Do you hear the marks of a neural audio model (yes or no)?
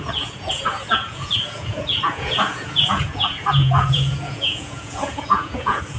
yes